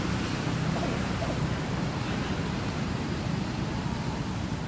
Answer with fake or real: fake